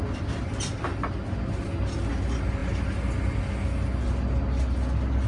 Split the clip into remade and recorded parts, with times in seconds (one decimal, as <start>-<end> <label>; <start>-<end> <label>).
0.0-5.3 recorded